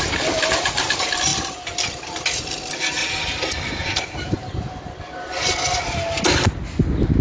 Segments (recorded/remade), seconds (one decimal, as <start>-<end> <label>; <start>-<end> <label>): 0.0-3.0 recorded; 3.0-4.6 remade; 4.6-7.2 recorded